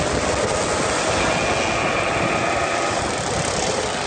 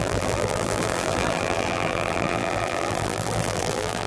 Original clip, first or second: first